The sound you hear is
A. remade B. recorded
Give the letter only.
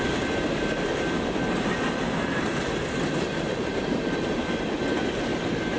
B